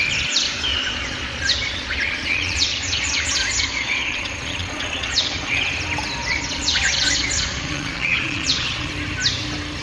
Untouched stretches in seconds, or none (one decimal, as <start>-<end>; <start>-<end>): 0.0-0.7; 5.6-6.2; 8.9-9.8